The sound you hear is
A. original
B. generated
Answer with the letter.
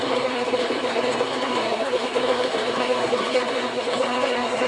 B